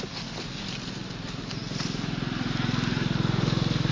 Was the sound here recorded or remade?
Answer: recorded